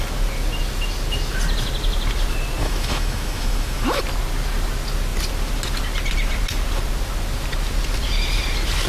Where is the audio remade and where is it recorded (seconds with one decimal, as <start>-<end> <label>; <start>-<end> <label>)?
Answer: 0.0-2.6 recorded; 2.6-4.0 remade; 4.0-8.9 recorded